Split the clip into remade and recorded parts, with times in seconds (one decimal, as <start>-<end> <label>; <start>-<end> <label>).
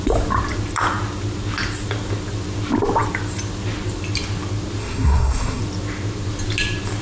0.0-4.8 recorded; 4.8-5.6 remade; 5.6-7.0 recorded